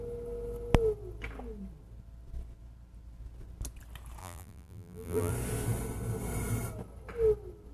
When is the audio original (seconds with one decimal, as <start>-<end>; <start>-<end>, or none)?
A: 0.0-4.2; 5.3-7.7